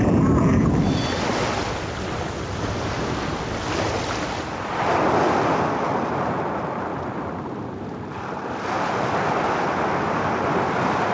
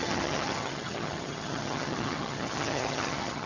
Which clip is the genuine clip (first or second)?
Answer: first